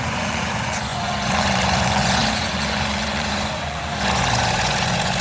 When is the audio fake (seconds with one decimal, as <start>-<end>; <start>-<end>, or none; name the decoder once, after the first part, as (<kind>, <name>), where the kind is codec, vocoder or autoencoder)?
0.0-5.2 (vocoder, Vocos)